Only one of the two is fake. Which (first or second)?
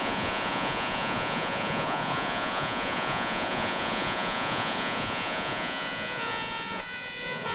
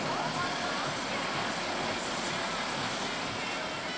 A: first